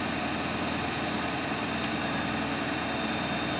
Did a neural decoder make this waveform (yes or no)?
no